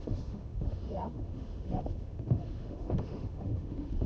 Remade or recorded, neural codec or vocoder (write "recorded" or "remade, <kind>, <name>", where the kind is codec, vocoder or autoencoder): remade, autoencoder, DAC-VAE